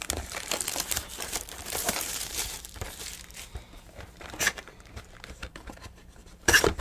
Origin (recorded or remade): remade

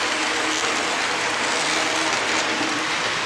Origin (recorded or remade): recorded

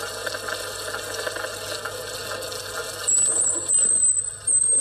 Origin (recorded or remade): recorded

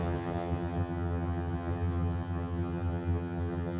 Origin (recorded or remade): remade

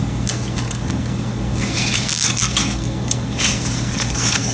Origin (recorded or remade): remade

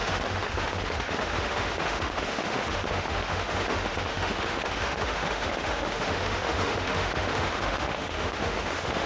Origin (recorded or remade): remade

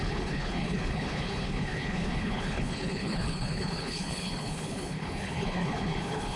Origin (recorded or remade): remade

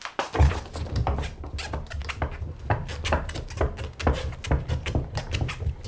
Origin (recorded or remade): recorded